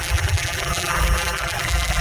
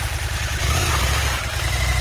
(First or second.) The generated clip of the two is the first